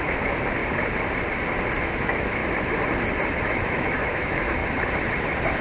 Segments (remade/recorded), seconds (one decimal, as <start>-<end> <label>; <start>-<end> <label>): 0.0-0.6 remade; 0.6-1.8 recorded; 1.8-2.4 remade; 2.4-3.3 recorded; 3.3-4.6 remade; 4.6-5.6 recorded